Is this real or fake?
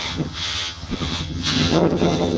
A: fake